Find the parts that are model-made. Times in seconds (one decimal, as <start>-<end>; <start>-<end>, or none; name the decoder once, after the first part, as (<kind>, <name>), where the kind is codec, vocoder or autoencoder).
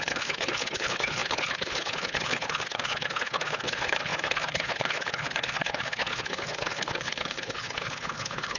0.0-8.6 (codec, HILCodec)